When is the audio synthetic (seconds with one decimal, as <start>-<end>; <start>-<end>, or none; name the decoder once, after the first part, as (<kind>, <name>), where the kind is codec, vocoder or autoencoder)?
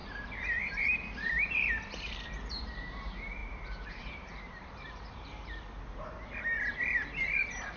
0.0-6.5 (vocoder, BigVGAN v2); 7.2-7.8